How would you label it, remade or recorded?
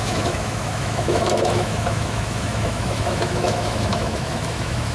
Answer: remade